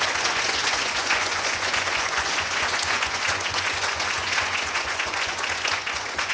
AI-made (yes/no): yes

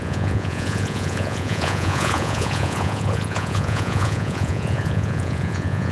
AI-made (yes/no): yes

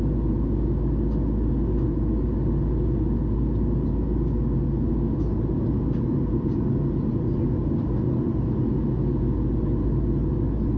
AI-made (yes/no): no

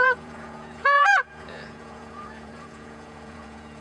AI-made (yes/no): yes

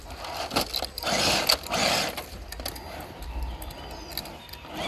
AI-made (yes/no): no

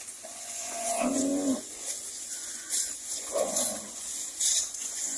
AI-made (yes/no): yes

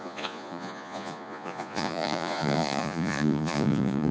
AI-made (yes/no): yes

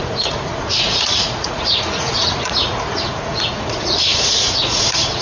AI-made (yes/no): yes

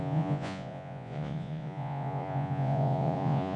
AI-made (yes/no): yes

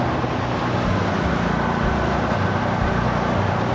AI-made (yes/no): no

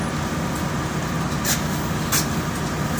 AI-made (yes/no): no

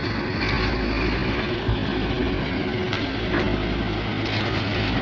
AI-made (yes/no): no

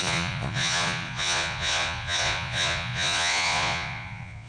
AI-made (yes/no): yes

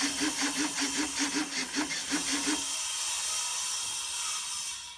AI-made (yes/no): no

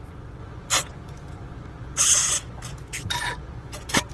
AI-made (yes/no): yes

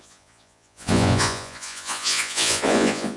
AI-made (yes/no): yes